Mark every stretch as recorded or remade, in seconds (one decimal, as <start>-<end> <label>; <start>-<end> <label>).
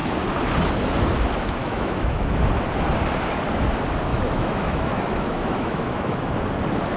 0.0-1.6 recorded; 1.6-2.4 remade; 2.4-4.1 recorded; 4.1-6.3 remade; 6.3-7.0 recorded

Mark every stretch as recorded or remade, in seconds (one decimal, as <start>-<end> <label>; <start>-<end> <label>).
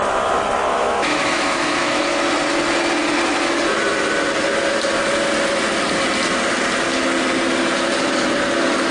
0.0-0.7 recorded; 0.7-2.0 remade; 2.0-8.9 recorded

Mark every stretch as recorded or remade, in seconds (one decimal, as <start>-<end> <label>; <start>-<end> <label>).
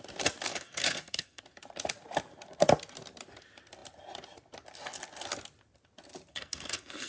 0.0-0.5 recorded; 0.5-1.4 remade; 1.4-6.3 recorded; 6.3-7.1 remade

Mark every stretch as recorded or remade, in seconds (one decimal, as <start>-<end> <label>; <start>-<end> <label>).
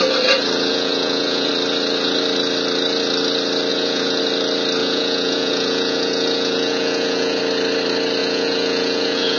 0.0-0.7 recorded; 0.7-1.5 remade; 1.5-3.7 recorded; 3.7-4.2 remade; 4.2-4.8 recorded; 4.8-7.4 remade; 7.4-8.2 recorded; 8.2-9.4 remade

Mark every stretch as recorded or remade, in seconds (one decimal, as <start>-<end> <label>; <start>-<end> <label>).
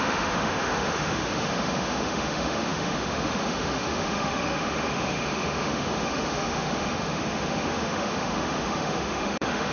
0.0-9.7 remade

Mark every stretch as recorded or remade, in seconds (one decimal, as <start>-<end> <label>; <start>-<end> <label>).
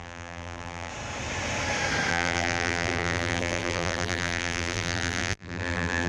0.0-0.9 remade; 0.9-2.1 recorded; 2.1-6.1 remade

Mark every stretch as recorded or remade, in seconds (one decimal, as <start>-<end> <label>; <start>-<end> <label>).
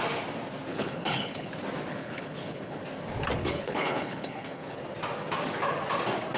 0.0-0.7 recorded; 0.7-1.5 remade; 1.5-1.9 recorded; 1.9-2.8 remade; 2.8-3.4 recorded; 3.4-4.8 remade; 4.8-6.4 recorded